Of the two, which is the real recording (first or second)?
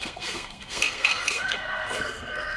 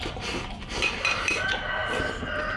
second